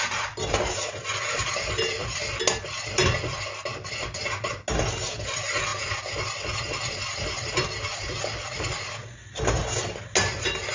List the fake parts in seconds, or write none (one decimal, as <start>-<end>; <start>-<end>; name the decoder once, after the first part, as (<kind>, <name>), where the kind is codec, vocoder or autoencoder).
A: none